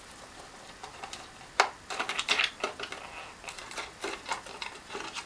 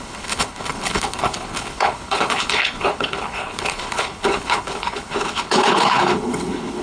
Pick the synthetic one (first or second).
second